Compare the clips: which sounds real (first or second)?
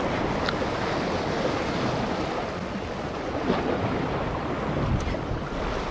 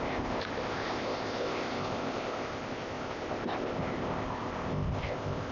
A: first